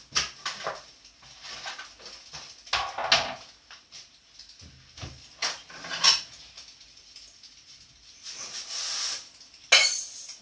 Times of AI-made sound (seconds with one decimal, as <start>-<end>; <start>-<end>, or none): none